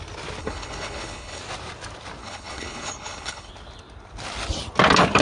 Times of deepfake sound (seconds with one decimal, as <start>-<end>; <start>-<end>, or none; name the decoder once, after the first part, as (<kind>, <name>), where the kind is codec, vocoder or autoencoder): 0.4-1.4 (codec, HILCodec); 2.2-3.5